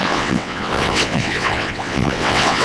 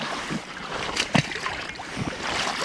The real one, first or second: second